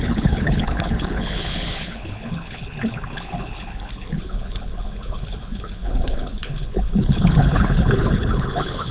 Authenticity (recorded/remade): remade